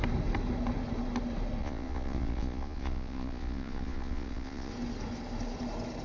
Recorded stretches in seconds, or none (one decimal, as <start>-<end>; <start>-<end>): 0.0-1.6; 4.7-6.0